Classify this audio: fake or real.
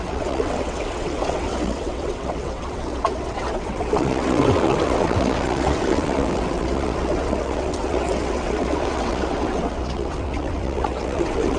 fake